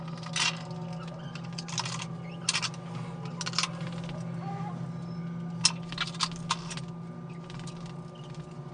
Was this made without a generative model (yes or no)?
yes